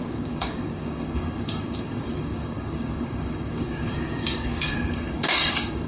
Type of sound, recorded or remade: remade